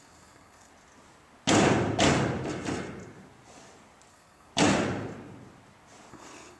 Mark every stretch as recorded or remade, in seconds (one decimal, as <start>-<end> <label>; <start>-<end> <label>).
0.0-0.7 remade; 0.7-4.1 recorded; 4.1-4.5 remade; 4.5-6.1 recorded; 6.1-6.6 remade